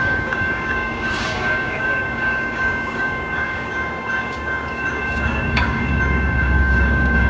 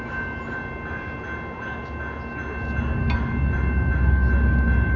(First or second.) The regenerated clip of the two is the first